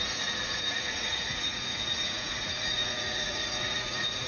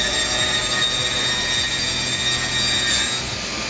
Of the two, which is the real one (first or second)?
second